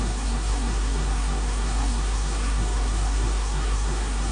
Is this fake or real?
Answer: fake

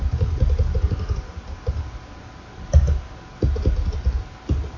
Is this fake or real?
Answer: real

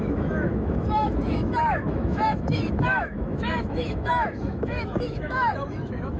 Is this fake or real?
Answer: fake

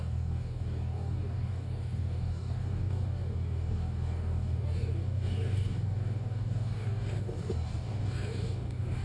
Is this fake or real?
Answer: fake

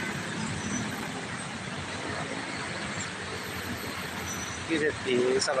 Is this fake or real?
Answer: real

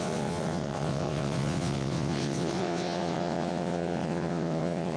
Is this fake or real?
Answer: fake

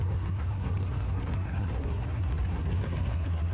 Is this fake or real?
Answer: fake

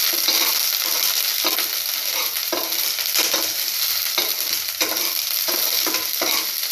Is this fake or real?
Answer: real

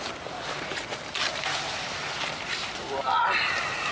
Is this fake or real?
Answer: real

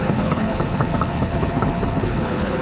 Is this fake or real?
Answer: fake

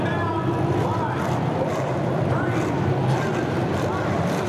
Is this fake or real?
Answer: real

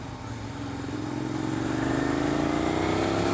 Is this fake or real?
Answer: real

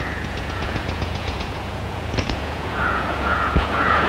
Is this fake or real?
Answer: fake